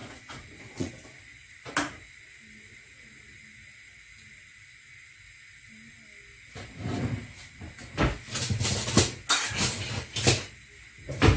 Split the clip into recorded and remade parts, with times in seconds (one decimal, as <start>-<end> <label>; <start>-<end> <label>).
0.0-0.9 remade; 0.9-11.4 recorded